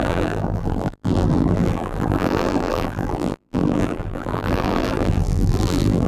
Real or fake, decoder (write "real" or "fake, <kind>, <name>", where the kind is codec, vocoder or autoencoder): fake, vocoder, BigVGAN v2